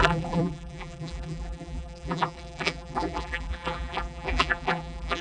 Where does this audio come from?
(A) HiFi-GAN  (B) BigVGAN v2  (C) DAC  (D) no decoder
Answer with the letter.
B